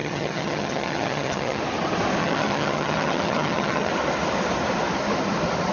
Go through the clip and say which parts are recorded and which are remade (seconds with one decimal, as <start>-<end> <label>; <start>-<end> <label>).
0.0-1.6 remade; 1.6-2.2 recorded; 2.2-3.9 remade; 3.9-5.7 recorded